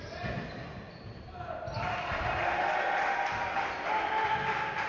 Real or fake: real